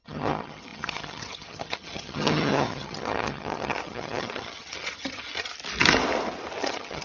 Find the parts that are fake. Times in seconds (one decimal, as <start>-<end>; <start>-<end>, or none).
0.0-5.5; 6.6-7.0